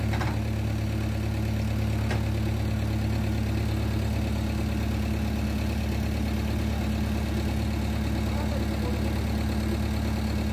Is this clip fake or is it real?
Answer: real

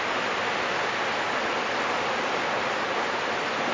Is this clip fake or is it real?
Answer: real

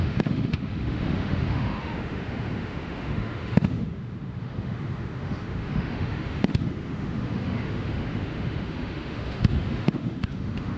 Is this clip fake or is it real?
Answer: fake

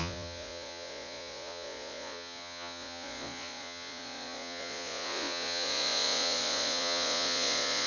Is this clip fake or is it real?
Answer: fake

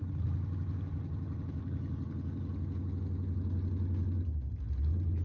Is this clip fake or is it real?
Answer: real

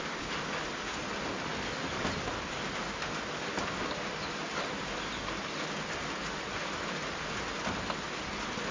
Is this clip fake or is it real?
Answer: real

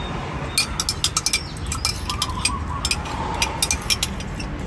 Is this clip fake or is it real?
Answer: real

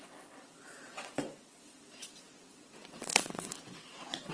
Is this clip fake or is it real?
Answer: fake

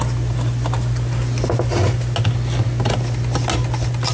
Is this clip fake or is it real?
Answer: real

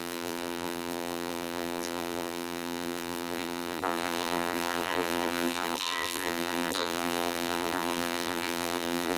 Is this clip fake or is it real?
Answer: fake